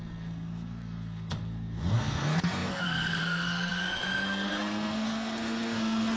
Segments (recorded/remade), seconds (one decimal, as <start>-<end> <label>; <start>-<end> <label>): 0.0-6.2 remade

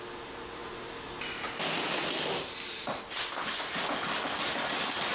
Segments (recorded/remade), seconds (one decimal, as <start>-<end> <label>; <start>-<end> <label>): 0.0-5.1 recorded